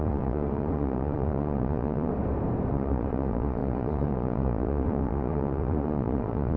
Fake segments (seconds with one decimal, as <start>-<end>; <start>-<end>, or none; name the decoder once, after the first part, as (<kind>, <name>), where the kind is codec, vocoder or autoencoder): 0.0-2.1 (vocoder, Vocos); 2.7-6.6